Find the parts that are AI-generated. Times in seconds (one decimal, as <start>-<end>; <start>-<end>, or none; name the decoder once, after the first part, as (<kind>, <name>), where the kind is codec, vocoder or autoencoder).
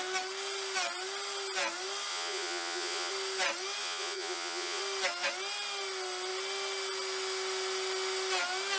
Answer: 2.1-3.1 (vocoder, Vocos); 3.8-4.8